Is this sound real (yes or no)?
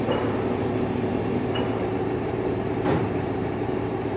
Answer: no